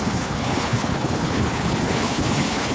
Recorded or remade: remade